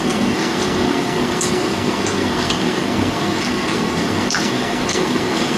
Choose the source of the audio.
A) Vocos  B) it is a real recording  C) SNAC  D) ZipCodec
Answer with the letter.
C